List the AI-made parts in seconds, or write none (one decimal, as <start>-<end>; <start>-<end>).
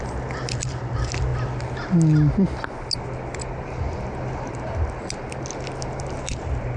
none